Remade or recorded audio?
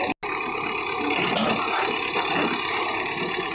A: recorded